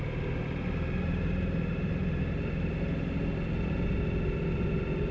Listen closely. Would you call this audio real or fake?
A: real